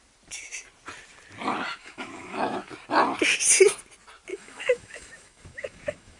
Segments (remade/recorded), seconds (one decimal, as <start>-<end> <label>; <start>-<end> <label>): 0.0-1.7 recorded; 1.7-2.7 remade; 2.7-4.3 recorded; 4.3-6.2 remade